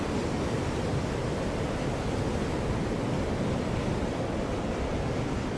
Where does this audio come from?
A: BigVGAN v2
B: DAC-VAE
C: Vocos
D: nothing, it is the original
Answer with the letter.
D